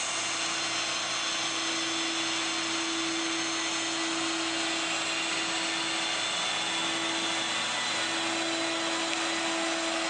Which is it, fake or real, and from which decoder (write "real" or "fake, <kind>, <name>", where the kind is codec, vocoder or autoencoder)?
real